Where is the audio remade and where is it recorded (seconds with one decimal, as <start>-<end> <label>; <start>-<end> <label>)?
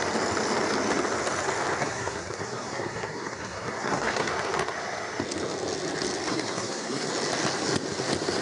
0.0-1.8 recorded; 1.8-4.3 remade; 4.3-6.3 recorded; 6.3-7.1 remade; 7.1-8.4 recorded